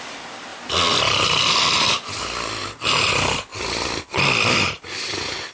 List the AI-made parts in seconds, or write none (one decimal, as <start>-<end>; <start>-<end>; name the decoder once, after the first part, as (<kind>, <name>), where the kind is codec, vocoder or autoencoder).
none